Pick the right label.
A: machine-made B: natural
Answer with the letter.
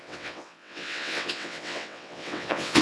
A